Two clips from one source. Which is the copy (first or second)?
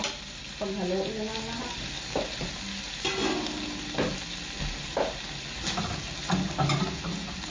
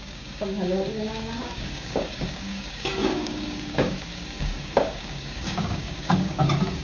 second